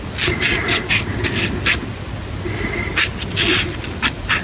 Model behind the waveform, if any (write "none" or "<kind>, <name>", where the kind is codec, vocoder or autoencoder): none